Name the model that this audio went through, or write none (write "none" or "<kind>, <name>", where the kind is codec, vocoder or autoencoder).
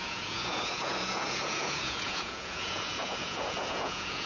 vocoder, Vocos